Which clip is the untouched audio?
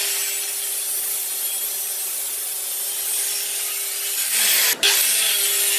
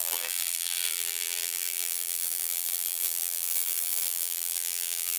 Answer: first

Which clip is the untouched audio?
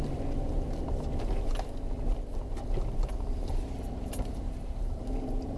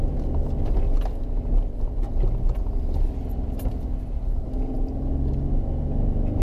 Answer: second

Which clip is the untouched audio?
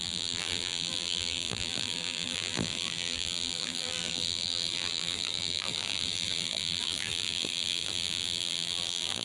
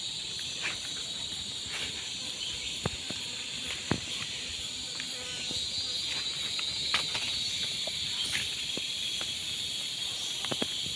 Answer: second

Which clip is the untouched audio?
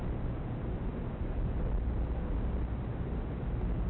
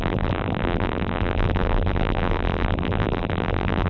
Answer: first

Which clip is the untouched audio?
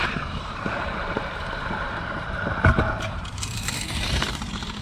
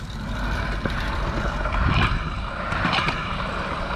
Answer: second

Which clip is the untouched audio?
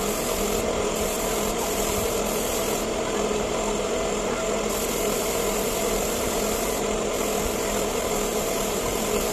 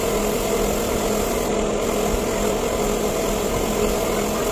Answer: second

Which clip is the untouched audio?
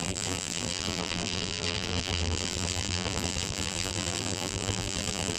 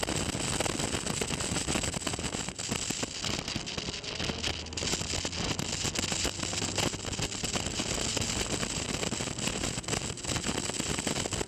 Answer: second